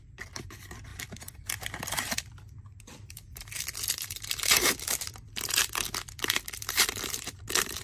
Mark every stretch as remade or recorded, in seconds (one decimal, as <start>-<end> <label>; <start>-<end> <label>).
0.0-7.8 remade